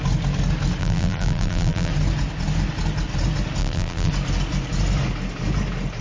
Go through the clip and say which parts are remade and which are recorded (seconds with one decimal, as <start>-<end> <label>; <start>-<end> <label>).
0.0-0.8 recorded; 0.8-1.9 remade; 1.9-3.6 recorded; 3.6-4.1 remade; 4.1-6.0 recorded